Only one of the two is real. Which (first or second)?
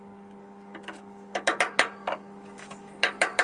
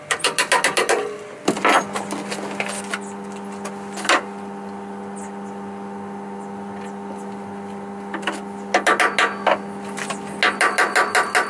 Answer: second